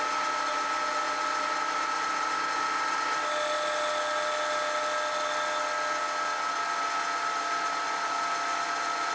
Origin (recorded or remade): recorded